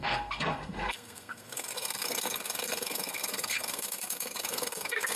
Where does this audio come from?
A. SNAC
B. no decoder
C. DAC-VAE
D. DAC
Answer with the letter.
A